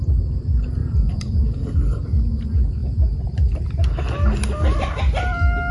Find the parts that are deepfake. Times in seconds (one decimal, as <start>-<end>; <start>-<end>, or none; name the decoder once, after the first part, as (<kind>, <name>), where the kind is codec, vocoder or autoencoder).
0.8-2.0 (vocoder, BigVGAN v2)

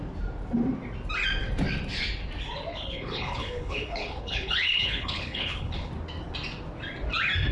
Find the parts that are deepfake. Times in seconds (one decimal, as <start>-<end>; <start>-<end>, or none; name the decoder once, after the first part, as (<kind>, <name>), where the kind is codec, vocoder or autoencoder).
2.7-5.9 (codec, HILCodec)